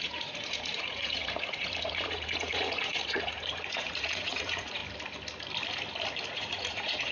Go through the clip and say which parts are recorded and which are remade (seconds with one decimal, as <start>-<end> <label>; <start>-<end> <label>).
0.0-4.8 remade; 4.8-6.3 recorded; 6.3-7.1 remade